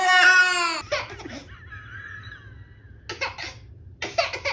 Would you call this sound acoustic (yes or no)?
yes